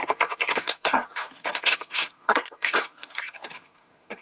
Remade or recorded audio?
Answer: remade